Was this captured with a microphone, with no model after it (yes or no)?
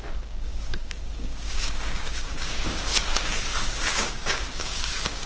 no